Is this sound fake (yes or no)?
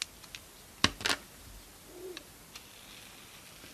no